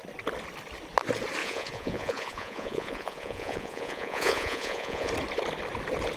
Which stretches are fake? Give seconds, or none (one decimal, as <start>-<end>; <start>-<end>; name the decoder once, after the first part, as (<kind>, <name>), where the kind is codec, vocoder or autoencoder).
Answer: 1.4-5.1 (vocoder, Vocos)